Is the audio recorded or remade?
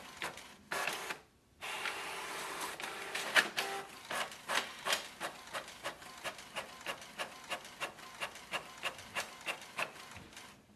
recorded